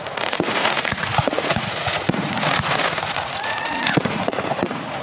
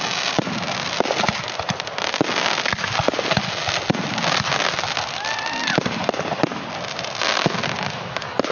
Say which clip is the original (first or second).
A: second